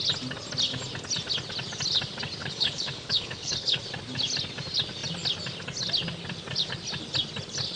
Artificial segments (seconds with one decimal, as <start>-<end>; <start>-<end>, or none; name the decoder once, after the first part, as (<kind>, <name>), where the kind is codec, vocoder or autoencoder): 2.4-3.8 (codec, HILCodec)